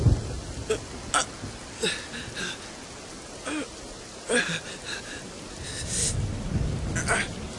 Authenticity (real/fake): real